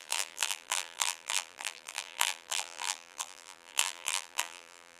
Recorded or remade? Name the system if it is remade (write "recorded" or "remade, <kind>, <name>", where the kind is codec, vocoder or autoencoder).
remade, vocoder, BigVGAN v2